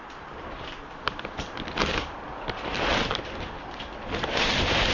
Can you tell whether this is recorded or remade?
recorded